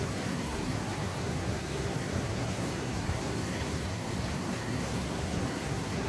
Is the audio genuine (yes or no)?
no